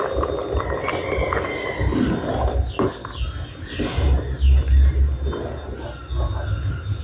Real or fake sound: real